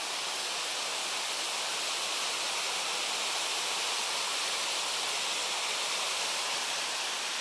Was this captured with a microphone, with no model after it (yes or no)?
yes